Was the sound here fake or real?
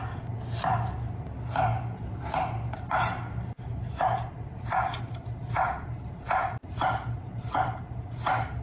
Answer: real